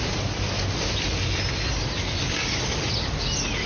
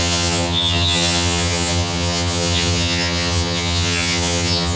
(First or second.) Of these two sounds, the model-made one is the second